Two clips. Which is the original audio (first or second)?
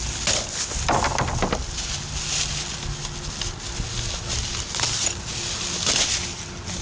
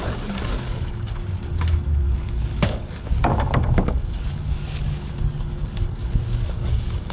first